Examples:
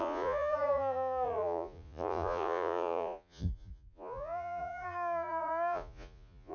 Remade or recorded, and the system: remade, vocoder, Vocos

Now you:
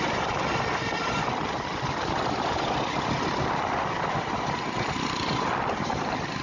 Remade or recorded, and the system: recorded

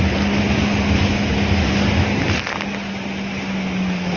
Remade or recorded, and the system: recorded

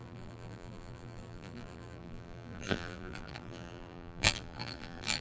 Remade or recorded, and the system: remade, vocoder, BigVGAN v2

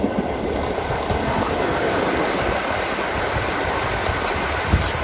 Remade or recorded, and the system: recorded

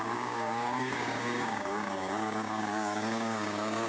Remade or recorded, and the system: remade, codec, DAC